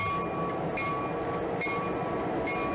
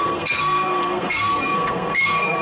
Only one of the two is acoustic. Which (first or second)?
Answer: first